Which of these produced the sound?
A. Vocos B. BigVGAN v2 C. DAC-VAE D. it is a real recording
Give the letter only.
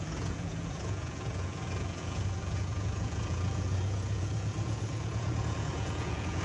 A